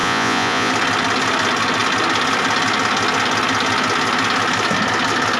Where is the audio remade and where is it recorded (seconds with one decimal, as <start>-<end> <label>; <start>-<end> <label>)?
0.0-0.7 remade; 0.7-5.4 recorded